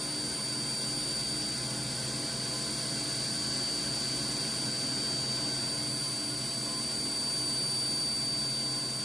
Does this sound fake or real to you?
real